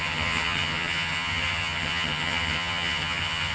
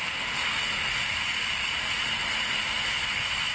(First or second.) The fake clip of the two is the first